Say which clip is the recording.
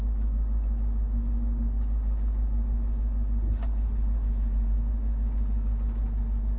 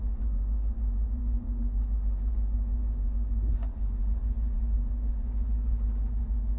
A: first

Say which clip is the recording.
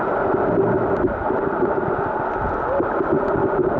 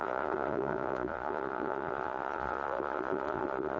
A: first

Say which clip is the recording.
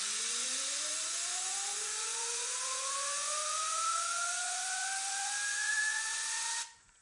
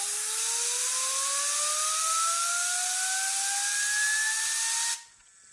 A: second